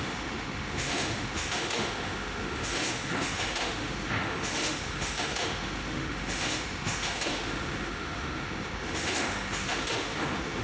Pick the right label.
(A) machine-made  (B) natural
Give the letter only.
A